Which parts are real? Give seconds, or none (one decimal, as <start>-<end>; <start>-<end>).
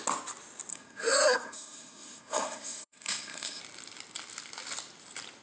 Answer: 0.0-0.7; 3.6-5.4